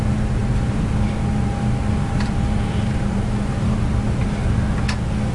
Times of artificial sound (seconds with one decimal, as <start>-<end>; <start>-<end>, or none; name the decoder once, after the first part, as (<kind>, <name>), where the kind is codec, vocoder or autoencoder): 0.4-0.9 (vocoder, BigVGAN v2); 1.5-4.7